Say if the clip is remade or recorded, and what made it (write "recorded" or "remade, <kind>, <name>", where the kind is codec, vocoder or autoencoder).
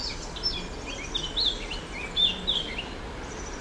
recorded